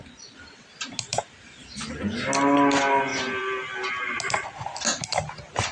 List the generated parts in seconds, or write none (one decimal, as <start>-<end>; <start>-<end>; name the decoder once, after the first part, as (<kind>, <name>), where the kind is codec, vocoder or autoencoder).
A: 1.1-1.8 (vocoder, BigVGAN v2); 3.1-4.0